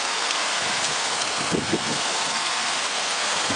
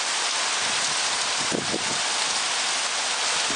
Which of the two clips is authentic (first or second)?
second